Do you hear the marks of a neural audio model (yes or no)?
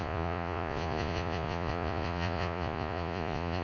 yes